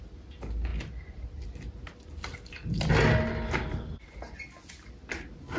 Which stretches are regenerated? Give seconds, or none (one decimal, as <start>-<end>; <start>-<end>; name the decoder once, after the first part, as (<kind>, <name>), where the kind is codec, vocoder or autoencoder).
none